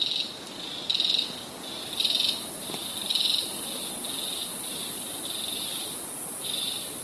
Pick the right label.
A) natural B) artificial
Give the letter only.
A